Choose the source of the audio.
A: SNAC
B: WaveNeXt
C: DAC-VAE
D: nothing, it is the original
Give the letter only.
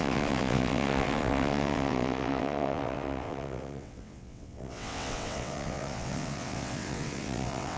B